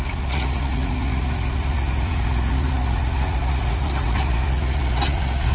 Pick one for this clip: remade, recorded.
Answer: remade